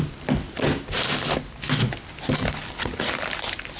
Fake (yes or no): no